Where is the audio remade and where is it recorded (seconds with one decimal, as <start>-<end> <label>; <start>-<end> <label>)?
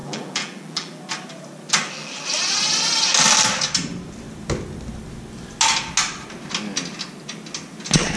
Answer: 0.0-1.0 remade; 1.0-8.2 recorded